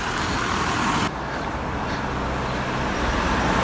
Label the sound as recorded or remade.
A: recorded